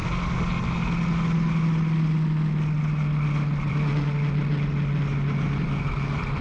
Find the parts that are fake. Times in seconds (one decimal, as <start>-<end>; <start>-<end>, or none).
none